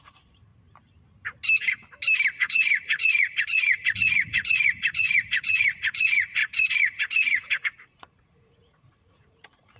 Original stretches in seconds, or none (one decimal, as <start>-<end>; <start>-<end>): 0.5-2.3